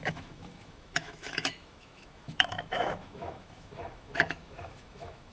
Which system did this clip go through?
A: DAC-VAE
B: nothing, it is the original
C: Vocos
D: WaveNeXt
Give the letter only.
A